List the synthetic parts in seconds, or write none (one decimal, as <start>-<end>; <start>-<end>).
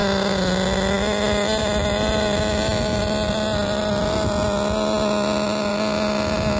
none